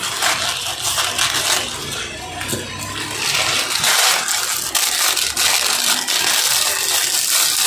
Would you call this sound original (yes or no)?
yes